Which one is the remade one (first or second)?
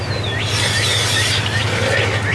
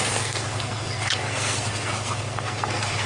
second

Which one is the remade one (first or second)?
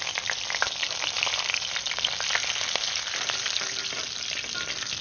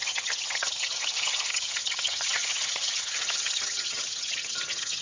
second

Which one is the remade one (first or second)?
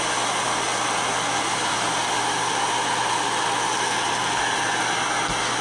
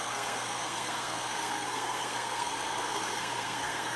second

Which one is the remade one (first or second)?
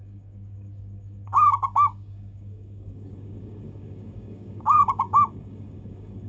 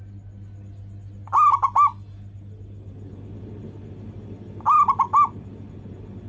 first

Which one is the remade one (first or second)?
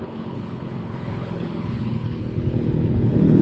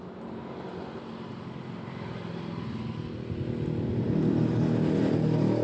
first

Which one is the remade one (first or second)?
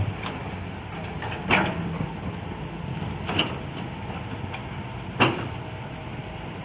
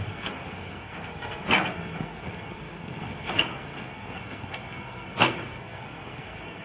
second